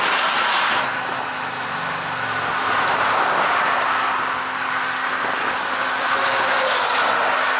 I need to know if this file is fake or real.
real